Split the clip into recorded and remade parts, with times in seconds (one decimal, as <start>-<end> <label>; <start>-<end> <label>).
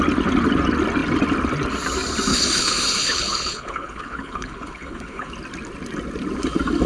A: 0.0-2.3 recorded; 2.3-5.3 remade; 5.3-6.9 recorded